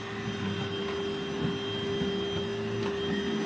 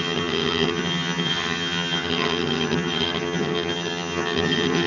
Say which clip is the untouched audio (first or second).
first